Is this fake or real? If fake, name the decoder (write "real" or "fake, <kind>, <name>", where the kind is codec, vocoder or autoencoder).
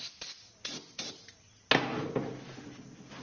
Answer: real